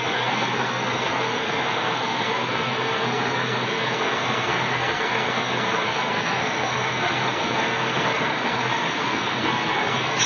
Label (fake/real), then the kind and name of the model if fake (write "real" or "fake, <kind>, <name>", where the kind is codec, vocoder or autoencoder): fake, codec, SNAC